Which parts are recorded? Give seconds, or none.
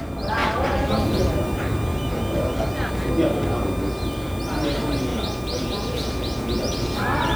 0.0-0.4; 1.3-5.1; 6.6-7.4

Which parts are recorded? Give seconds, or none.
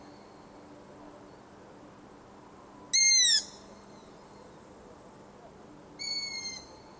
0.0-3.3; 5.3-7.0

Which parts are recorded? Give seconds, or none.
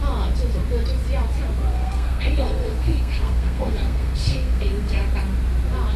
0.0-1.7; 5.0-6.0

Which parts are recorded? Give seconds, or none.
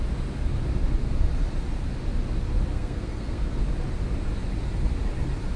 0.0-2.7; 3.5-5.6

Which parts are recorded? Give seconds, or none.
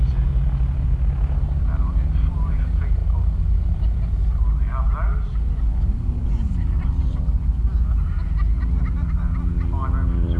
0.0-10.4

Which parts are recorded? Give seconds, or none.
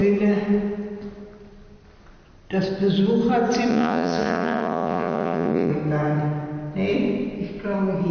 0.0-3.7; 5.7-8.1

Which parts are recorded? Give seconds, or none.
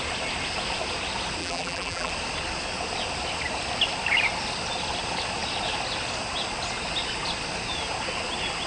0.0-1.4; 2.1-8.7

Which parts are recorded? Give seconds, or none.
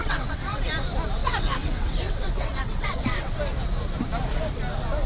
0.7-1.2; 3.4-5.1